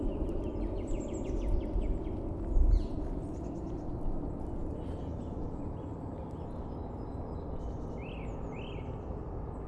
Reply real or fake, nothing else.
real